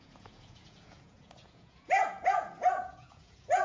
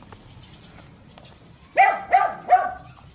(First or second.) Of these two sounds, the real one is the second